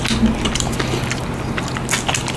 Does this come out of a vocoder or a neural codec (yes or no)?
no